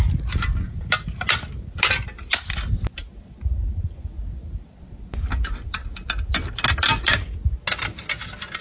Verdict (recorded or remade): recorded